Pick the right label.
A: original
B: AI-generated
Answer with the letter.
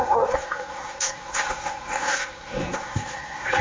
B